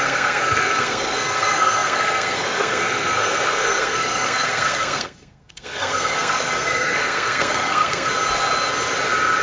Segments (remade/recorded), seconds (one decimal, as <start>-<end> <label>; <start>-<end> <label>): 0.0-8.1 remade; 8.1-9.4 recorded

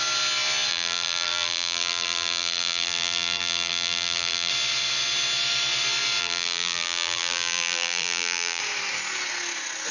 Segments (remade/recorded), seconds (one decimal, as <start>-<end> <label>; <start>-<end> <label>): 0.0-0.7 recorded; 0.7-4.5 remade; 4.5-6.2 recorded; 6.2-8.6 remade; 8.6-9.9 recorded